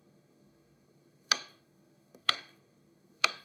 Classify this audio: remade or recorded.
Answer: remade